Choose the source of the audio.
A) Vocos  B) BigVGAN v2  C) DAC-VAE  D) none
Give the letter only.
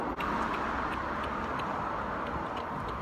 D